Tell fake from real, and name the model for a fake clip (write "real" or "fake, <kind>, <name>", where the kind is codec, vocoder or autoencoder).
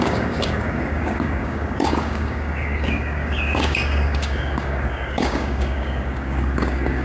fake, codec, DAC